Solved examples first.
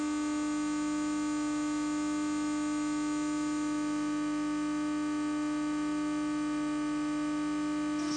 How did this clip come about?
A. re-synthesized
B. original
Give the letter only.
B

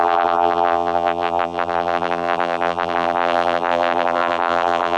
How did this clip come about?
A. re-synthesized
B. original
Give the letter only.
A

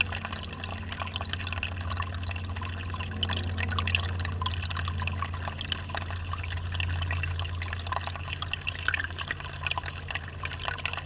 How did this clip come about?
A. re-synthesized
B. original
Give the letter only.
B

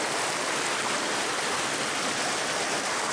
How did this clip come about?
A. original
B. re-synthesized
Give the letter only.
A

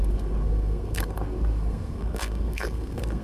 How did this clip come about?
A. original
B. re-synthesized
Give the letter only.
B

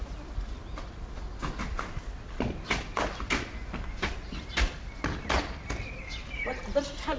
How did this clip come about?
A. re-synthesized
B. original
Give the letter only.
B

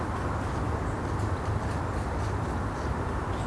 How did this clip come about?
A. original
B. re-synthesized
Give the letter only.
A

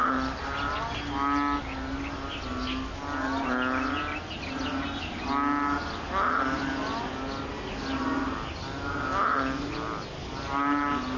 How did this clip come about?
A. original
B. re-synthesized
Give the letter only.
A